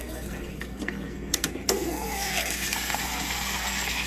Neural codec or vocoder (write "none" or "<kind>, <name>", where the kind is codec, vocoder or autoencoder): codec, SNAC